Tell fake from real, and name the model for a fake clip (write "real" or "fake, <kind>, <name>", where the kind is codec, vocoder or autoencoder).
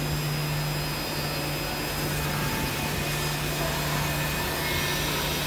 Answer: real